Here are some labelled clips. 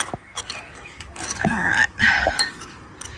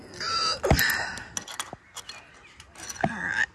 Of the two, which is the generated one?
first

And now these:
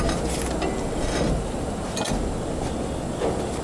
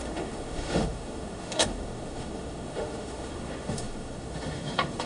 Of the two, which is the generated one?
second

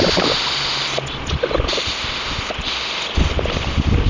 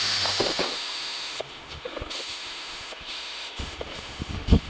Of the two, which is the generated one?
second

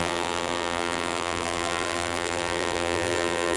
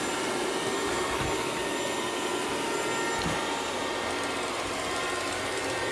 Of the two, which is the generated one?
first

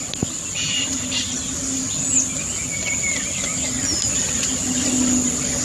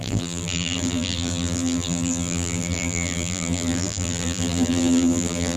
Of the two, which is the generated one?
second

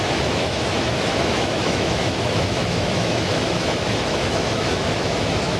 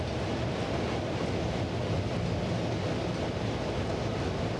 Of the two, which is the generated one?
first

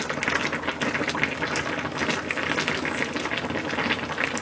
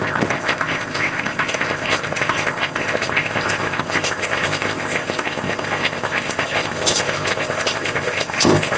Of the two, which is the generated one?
second